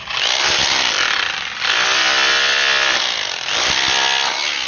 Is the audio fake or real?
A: real